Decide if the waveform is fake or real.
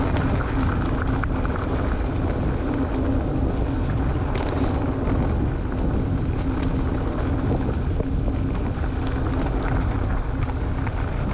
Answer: real